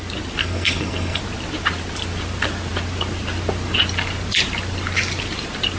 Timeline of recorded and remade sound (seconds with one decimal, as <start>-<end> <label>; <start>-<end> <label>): 0.0-0.4 recorded; 0.4-1.2 remade; 1.2-5.8 recorded

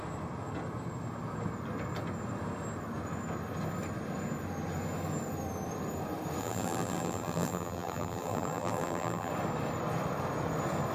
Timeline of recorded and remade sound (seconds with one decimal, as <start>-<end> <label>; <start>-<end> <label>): 0.0-6.4 recorded; 6.4-9.3 remade; 9.3-10.9 recorded

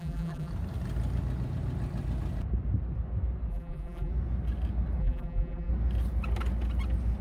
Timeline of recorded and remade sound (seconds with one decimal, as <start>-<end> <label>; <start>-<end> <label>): 0.0-0.5 remade; 0.5-3.5 recorded; 3.5-4.1 remade; 4.1-5.0 recorded; 5.0-5.7 remade; 5.7-7.2 recorded

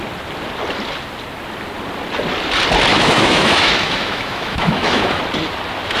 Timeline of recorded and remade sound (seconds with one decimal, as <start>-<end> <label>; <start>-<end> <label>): 0.0-2.9 recorded; 2.9-5.2 remade; 5.2-6.0 recorded